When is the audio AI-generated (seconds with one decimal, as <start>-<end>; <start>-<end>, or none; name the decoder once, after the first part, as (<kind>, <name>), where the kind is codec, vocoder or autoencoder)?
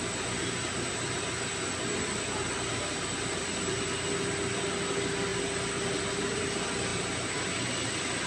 none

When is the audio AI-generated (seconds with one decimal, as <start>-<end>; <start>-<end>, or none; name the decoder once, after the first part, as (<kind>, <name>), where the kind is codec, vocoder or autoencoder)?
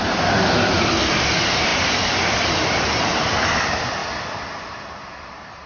none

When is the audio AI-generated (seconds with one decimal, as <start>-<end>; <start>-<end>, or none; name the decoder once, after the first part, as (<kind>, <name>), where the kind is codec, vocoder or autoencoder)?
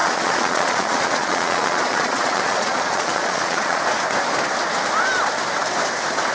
0.0-3.8 (vocoder, Vocos)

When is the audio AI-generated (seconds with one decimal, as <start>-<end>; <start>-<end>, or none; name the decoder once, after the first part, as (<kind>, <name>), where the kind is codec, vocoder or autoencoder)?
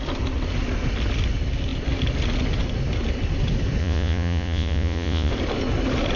3.8-5.3 (vocoder, Vocos)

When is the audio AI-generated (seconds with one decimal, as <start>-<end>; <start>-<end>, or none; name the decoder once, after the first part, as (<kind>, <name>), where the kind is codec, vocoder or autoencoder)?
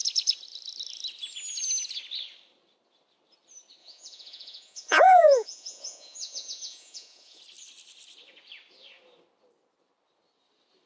3.8-7.4 (vocoder, Vocos)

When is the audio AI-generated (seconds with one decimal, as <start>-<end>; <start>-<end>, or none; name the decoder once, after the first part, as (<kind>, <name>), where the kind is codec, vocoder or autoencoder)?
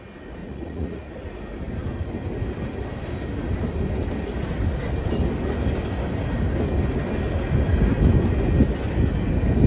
0.4-1.1 (vocoder, Vocos)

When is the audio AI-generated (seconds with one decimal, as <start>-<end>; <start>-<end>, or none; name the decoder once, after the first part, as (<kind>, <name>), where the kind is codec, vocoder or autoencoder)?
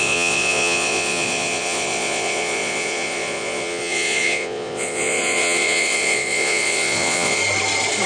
0.0-7.4 (vocoder, Vocos)